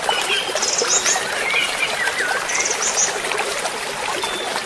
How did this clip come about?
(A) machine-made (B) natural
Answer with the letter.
B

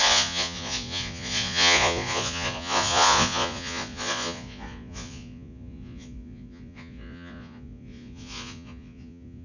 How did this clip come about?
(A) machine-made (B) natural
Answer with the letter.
A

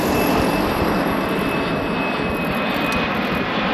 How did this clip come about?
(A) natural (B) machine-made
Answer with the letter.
A